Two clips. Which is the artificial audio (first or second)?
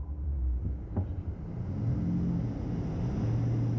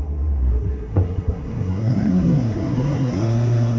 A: second